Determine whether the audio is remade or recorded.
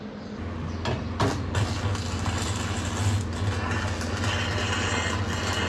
recorded